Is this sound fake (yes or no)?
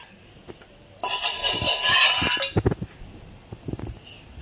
no